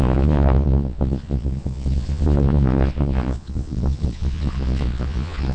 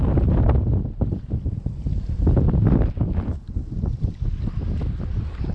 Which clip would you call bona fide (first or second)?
second